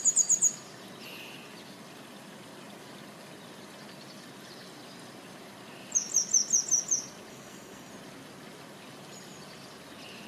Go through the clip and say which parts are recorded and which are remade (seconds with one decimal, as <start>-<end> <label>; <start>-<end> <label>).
0.0-7.3 recorded; 7.3-7.9 remade; 7.9-10.3 recorded